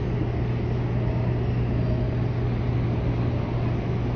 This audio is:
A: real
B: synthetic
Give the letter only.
A